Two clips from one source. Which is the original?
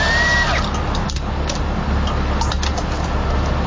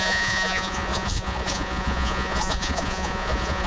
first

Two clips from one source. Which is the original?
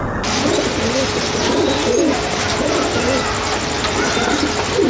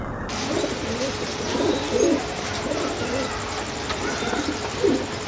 first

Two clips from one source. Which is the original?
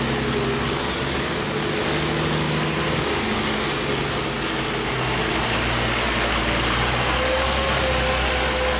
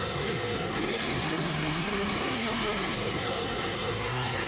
first